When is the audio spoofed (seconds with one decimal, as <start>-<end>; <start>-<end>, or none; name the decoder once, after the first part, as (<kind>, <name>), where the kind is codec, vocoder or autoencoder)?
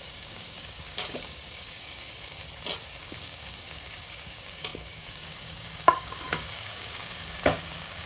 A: 0.0-2.4 (codec, DAC); 3.0-8.1